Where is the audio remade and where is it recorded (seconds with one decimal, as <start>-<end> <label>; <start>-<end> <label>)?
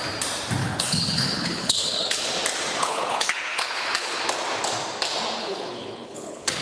0.0-0.6 recorded; 0.6-2.2 remade; 2.2-2.8 recorded; 2.8-4.2 remade; 4.2-5.4 recorded; 5.4-6.6 remade